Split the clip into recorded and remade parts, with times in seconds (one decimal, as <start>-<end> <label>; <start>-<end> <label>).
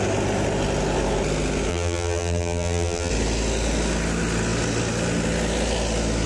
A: 0.0-1.7 recorded; 1.7-3.1 remade; 3.1-6.3 recorded